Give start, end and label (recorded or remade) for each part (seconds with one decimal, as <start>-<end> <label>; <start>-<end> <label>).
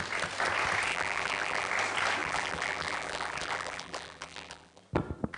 0.0-0.9 recorded; 0.9-1.7 remade; 1.7-2.2 recorded; 2.2-4.8 remade; 4.8-5.4 recorded